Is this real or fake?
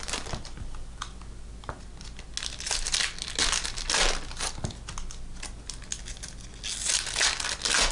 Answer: real